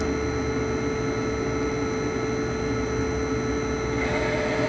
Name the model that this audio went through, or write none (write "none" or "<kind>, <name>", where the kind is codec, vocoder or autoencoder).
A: none